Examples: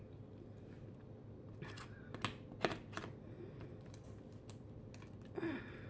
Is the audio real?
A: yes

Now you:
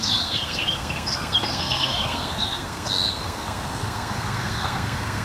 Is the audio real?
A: no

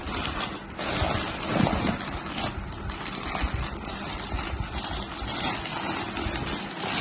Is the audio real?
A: yes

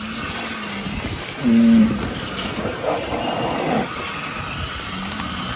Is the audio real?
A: yes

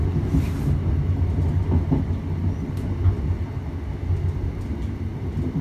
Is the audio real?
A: yes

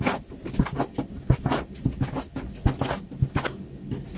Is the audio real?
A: yes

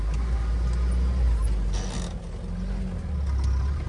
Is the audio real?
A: yes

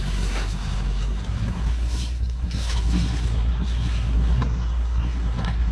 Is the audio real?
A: no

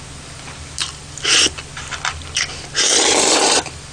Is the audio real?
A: yes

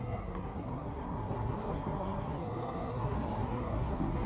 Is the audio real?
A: no